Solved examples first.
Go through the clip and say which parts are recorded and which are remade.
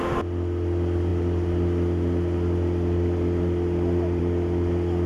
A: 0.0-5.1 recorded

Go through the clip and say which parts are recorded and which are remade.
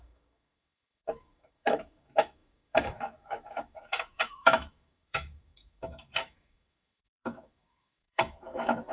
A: 0.0-8.9 remade